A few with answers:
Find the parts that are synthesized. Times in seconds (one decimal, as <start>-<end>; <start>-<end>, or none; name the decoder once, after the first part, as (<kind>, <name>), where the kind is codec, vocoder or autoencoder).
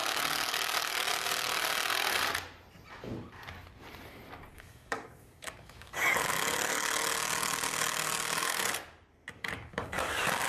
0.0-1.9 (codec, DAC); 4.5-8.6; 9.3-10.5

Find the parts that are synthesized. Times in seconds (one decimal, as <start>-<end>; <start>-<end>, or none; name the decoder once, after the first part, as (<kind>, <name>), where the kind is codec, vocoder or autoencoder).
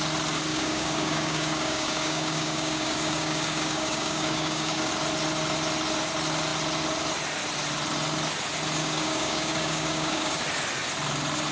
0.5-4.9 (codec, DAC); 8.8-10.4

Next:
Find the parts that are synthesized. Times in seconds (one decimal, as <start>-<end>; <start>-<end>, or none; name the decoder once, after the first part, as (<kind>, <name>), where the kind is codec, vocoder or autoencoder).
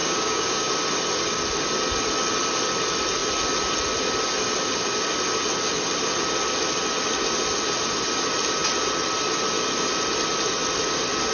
0.0-0.7 (codec, DAC)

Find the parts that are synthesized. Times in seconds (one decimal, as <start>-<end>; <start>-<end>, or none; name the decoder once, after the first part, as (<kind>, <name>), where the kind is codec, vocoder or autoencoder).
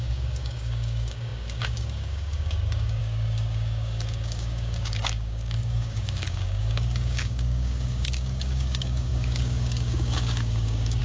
0.0-11.0 (codec, DAC)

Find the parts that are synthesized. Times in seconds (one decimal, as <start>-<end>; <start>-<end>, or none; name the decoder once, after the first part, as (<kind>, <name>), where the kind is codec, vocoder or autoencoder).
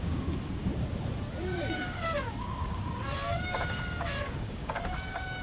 0.0-0.7 (codec, DAC); 1.4-5.4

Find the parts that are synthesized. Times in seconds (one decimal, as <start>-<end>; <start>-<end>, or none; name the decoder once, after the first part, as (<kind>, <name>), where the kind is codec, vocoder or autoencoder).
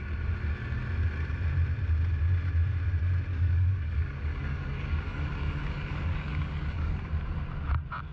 3.3-7.1 (codec, DAC)